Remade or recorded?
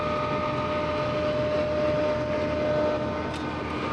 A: recorded